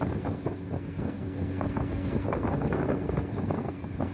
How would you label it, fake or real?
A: fake